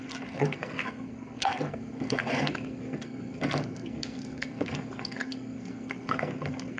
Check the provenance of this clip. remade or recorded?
remade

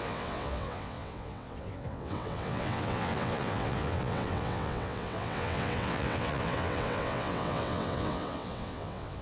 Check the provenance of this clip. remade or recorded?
remade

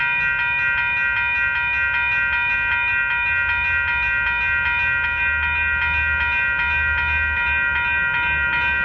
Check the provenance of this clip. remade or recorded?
recorded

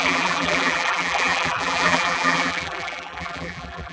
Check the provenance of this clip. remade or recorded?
remade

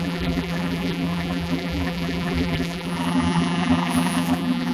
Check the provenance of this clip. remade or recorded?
remade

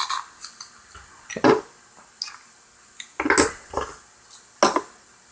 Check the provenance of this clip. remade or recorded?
recorded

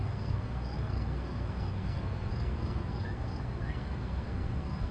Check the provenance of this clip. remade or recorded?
remade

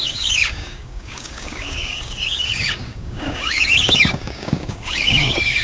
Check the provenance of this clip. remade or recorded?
remade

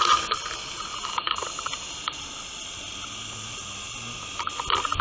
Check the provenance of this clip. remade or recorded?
recorded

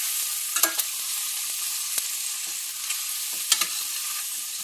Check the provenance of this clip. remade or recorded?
recorded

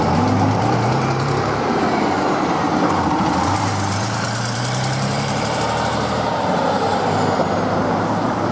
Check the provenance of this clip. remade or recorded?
remade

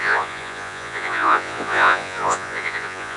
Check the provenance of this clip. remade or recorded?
remade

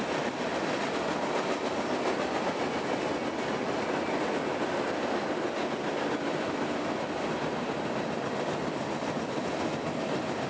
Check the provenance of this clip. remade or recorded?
recorded